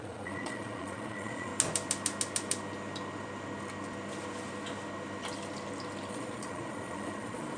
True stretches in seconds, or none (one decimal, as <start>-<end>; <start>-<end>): 1.5-6.1